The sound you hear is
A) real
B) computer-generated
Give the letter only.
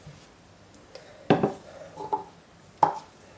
A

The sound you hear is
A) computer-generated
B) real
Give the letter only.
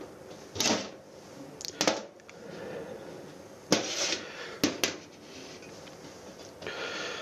B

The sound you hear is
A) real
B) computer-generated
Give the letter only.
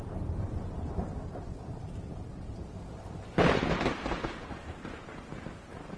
B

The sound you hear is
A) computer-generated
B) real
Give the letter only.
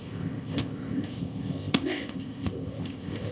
A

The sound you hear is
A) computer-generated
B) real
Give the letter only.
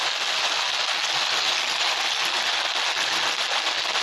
B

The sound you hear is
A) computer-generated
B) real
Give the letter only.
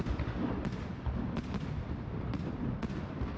B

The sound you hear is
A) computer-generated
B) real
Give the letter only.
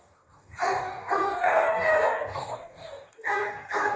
A